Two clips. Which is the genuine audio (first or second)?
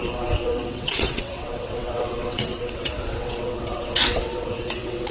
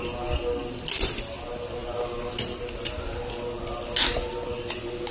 second